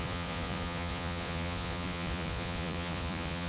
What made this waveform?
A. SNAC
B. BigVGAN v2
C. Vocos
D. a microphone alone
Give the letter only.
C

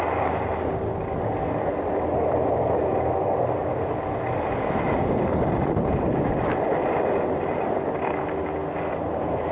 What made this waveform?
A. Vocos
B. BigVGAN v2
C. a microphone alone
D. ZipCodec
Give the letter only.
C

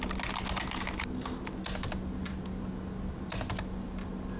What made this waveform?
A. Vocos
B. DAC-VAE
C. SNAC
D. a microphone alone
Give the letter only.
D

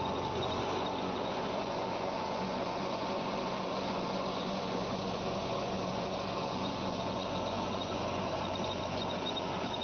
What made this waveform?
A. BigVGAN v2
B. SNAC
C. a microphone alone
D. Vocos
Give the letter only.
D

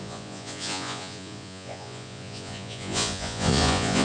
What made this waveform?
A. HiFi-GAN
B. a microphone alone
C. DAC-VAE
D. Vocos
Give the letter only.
D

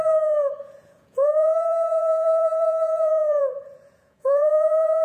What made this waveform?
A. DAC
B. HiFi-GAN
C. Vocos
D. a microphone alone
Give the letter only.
C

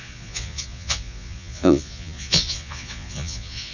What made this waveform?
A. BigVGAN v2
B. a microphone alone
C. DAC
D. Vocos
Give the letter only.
D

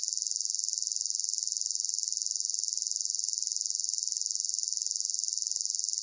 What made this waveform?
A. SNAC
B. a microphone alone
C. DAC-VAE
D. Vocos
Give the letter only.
B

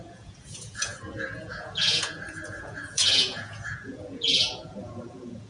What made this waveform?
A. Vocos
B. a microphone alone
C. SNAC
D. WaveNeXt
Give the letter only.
A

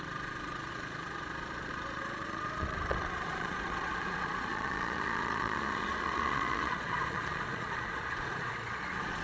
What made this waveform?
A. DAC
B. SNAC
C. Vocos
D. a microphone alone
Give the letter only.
C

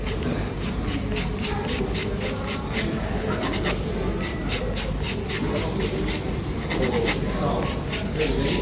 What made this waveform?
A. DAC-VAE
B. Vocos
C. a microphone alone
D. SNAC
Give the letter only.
C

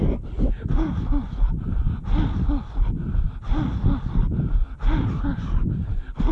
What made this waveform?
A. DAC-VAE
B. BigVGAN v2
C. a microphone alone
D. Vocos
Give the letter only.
C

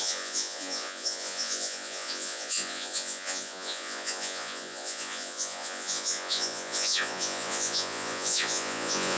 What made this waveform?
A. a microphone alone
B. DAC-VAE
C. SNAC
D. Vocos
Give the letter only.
D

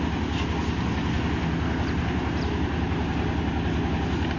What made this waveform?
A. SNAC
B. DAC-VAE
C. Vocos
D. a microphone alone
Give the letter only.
D